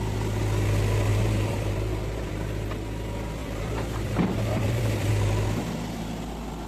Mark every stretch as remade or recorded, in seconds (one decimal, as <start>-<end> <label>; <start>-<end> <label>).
0.0-1.1 recorded; 1.1-2.3 remade; 2.3-3.4 recorded; 3.4-5.1 remade; 5.1-6.7 recorded